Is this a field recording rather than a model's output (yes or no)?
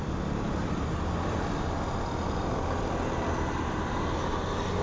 yes